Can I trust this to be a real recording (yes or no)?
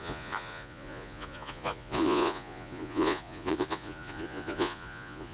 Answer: no